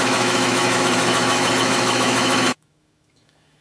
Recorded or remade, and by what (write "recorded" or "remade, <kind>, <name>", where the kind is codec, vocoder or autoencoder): remade, autoencoder, DAC-VAE